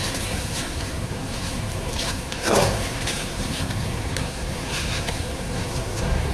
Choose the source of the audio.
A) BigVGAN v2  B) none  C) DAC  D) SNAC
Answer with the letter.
D